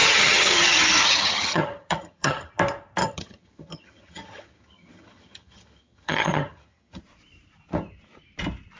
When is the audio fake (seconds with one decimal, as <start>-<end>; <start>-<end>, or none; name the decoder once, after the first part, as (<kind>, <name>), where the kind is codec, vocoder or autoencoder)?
0.0-2.5 (vocoder, HiFi-GAN); 3.0-7.0